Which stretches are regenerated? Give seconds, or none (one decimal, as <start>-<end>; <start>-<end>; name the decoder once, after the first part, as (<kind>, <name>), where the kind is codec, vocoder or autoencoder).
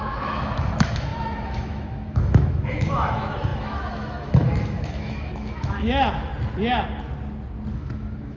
0.0-6.3 (autoencoder, DAC-VAE); 7.7-8.4